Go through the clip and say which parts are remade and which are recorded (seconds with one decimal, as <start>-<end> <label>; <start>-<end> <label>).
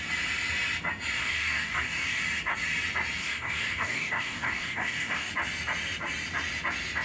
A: 0.0-1.2 recorded; 1.2-2.2 remade; 2.2-3.2 recorded; 3.2-5.3 remade; 5.3-7.0 recorded